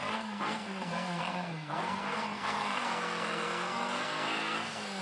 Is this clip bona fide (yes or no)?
no